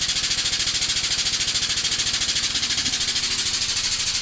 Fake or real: real